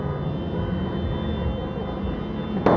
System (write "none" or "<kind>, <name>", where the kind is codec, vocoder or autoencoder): none